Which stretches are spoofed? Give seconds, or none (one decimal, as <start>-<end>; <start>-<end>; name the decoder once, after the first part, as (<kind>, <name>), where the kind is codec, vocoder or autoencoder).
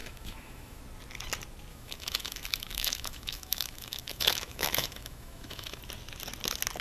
0.0-0.8 (autoencoder, DAC-VAE); 1.7-5.8